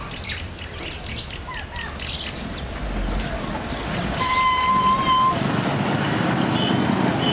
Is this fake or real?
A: real